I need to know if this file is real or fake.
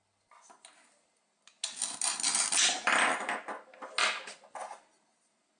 real